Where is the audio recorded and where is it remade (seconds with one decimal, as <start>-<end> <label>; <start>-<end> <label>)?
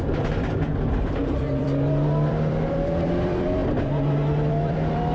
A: 0.0-3.6 remade; 3.6-4.5 recorded; 4.5-5.1 remade